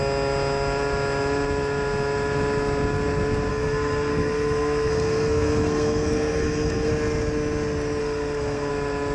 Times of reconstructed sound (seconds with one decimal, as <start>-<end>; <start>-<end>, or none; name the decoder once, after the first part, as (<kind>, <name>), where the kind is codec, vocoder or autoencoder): 3.5-6.9 (codec, SNAC); 8.0-8.7